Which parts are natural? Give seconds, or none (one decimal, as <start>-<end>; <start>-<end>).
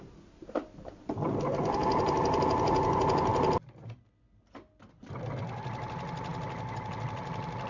0.0-7.7